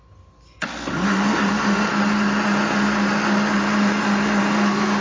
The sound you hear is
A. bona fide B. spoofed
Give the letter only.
A